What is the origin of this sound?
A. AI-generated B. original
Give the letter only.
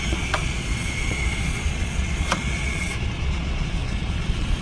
A